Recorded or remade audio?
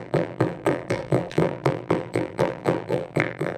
remade